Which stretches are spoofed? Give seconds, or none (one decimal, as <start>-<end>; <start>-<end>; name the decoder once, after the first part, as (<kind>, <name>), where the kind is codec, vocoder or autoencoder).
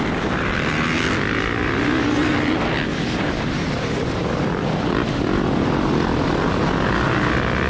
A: 2.2-5.9 (vocoder, BigVGAN v2)